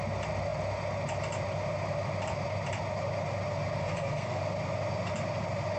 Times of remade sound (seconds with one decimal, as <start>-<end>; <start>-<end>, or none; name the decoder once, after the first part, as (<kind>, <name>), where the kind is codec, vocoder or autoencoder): 3.8-4.4 (codec, SNAC)